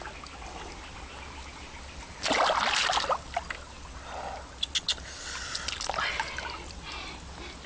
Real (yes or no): yes